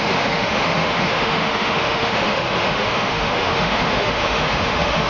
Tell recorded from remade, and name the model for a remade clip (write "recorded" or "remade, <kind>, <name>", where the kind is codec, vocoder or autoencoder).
remade, autoencoder, DAC-VAE